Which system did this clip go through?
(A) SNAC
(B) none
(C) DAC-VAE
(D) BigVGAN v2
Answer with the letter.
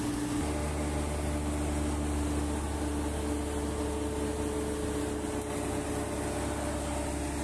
B